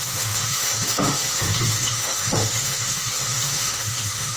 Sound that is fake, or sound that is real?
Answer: fake